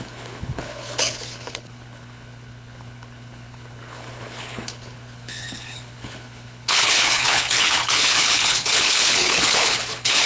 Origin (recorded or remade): remade